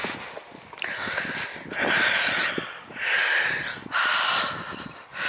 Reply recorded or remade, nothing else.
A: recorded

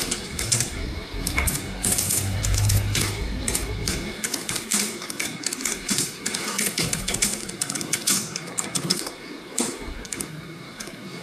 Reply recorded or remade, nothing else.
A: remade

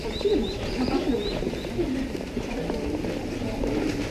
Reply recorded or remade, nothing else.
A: recorded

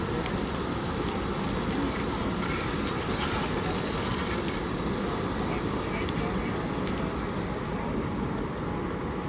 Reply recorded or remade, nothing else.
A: recorded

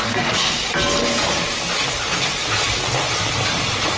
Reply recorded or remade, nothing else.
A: recorded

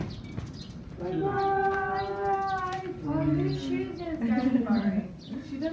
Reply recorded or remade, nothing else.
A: recorded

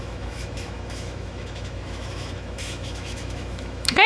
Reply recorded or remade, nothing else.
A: remade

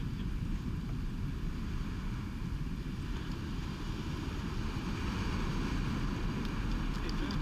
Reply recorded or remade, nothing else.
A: recorded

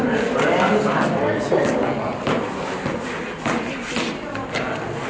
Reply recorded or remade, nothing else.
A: recorded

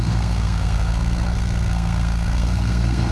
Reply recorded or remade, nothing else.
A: remade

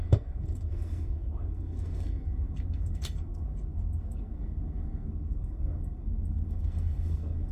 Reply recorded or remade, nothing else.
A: remade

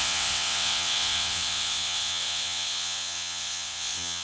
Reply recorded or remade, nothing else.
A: remade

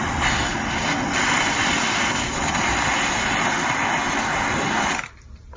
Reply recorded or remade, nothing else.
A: recorded